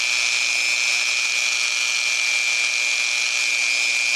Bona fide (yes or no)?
yes